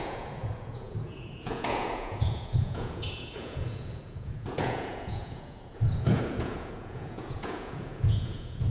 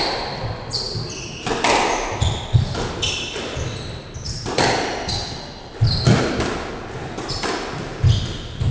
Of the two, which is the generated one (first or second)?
first